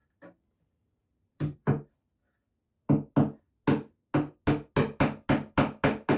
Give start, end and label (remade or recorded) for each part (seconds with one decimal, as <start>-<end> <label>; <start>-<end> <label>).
0.0-2.0 remade; 2.0-6.2 recorded